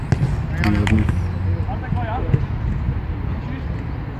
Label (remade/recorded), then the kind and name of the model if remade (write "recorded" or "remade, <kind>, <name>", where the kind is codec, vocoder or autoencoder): recorded